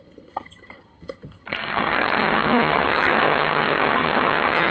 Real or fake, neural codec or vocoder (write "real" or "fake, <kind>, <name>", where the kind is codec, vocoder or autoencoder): fake, vocoder, HiFi-GAN